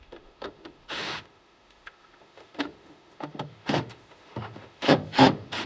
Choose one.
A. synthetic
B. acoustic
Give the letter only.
A